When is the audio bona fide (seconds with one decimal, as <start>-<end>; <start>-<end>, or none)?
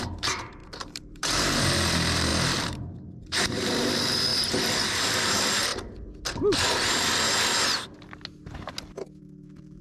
4.3-5.0; 5.7-9.2